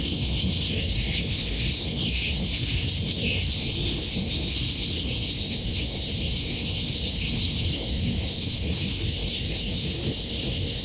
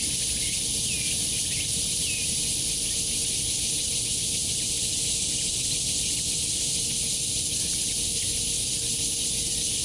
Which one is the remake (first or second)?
first